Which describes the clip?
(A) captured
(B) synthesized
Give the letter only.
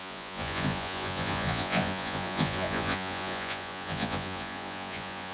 B